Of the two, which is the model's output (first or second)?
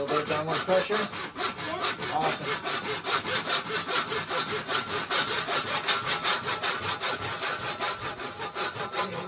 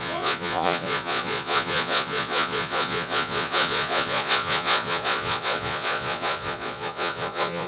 second